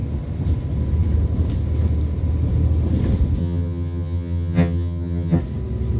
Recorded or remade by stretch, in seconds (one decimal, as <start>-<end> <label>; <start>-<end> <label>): 0.0-3.4 recorded; 3.4-5.4 remade; 5.4-6.0 recorded